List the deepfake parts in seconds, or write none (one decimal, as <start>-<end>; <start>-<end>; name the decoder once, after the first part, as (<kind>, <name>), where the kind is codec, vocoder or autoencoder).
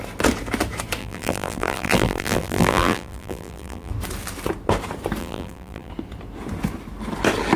1.0-3.9 (vocoder, BigVGAN v2); 5.2-5.9